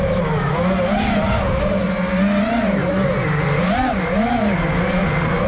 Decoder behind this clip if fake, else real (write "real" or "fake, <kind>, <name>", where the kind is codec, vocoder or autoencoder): real